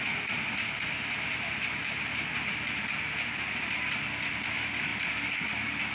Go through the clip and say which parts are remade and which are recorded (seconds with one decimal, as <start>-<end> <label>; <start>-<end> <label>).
0.0-5.9 recorded